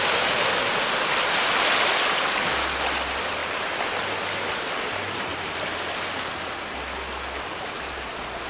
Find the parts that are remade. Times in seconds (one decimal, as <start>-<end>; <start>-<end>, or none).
none

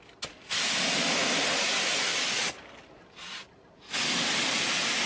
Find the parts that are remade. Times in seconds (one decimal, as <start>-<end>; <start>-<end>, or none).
none

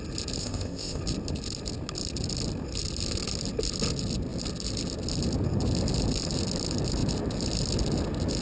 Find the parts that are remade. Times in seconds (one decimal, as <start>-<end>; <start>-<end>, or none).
0.4-1.0

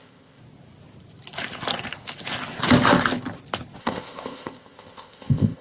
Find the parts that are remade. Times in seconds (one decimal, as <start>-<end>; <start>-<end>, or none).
0.0-0.4; 3.8-5.6

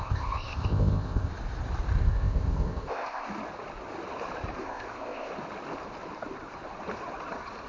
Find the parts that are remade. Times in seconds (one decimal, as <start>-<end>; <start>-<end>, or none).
0.0-1.3; 2.0-3.3; 4.6-5.3

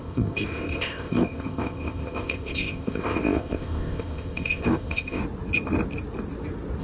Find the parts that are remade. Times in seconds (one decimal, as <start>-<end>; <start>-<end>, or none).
0.0-5.2

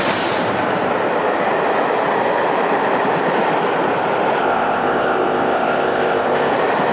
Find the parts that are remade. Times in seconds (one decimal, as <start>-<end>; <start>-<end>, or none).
4.4-6.5